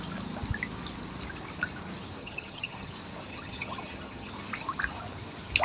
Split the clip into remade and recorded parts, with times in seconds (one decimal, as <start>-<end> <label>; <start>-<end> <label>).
0.0-2.2 recorded; 2.2-2.9 remade; 2.9-3.3 recorded; 3.3-4.3 remade; 4.3-5.6 recorded